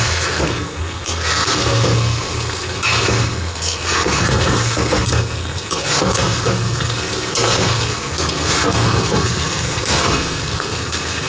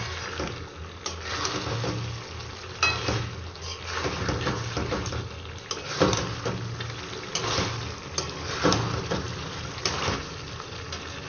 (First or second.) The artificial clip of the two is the first